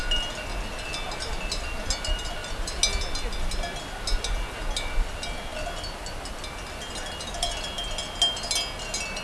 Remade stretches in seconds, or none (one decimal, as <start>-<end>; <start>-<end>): none